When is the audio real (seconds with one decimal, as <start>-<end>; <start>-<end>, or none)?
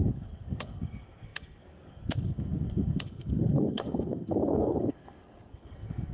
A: none